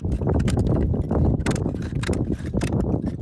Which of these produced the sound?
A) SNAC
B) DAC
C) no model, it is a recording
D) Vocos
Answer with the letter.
C